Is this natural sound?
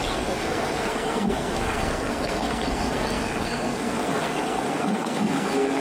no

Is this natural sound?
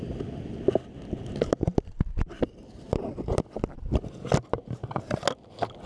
yes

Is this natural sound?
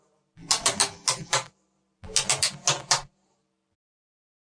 yes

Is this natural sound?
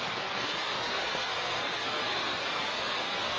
no